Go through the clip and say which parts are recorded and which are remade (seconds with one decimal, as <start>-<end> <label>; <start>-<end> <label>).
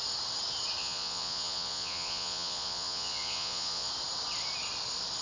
0.0-0.8 recorded; 0.8-3.9 remade; 3.9-5.2 recorded